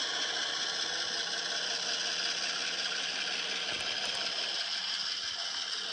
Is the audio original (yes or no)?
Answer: yes